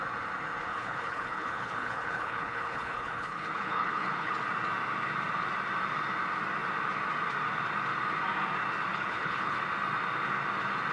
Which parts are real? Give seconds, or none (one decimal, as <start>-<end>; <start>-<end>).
0.0-0.7; 4.3-8.9; 9.6-10.9